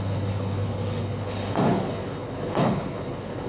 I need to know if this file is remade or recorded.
remade